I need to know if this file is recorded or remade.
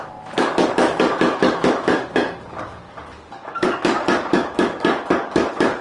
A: remade